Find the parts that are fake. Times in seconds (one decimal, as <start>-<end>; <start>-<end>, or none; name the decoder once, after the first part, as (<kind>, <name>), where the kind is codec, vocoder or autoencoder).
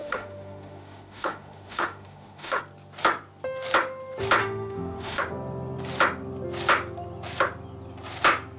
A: 0.0-2.6 (autoencoder, DAC-VAE); 4.4-5.2